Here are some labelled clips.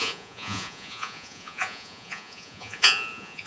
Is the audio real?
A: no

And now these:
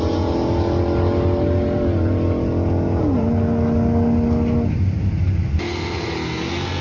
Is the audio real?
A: yes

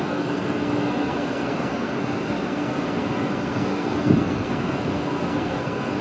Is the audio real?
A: no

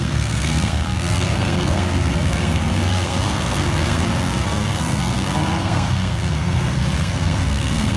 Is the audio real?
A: no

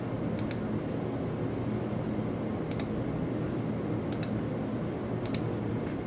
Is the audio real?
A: yes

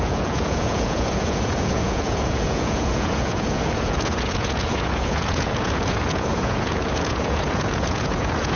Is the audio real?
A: no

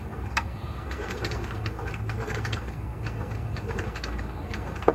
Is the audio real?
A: no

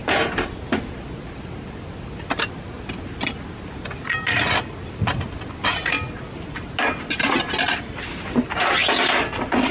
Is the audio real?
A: yes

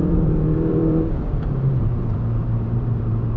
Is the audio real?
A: no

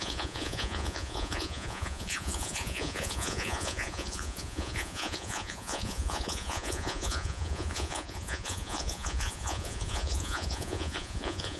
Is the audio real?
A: no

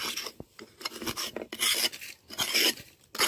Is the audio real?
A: yes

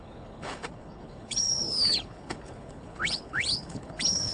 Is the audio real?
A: no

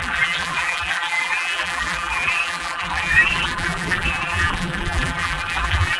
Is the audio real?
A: no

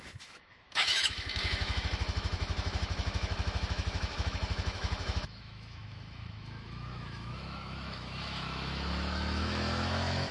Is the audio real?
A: no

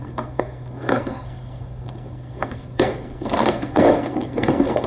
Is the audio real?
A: no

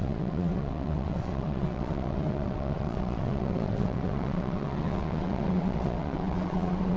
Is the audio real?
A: no